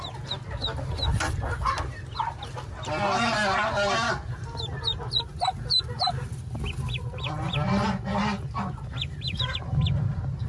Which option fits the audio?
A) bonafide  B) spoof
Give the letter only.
A